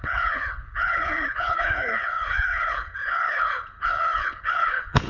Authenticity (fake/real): fake